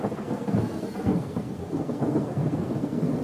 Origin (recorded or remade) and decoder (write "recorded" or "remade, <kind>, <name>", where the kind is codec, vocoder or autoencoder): remade, codec, SNAC